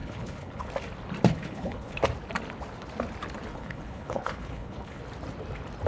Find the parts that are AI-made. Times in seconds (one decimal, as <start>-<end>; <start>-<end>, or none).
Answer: 0.0-0.7; 1.3-2.0; 3.5-5.0